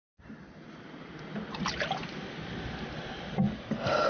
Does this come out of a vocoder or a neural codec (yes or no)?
no